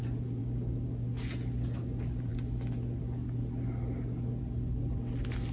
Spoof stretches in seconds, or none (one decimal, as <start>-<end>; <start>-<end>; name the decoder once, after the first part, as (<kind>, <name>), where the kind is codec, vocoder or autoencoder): 0.4-1.3 (codec, DAC)